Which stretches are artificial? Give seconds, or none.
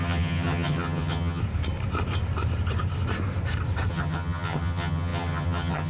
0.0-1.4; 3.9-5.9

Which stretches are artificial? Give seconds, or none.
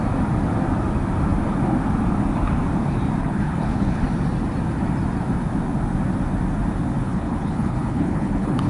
3.2-4.0; 7.0-8.7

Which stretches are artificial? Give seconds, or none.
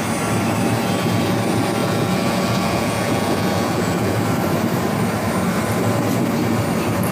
1.8-4.2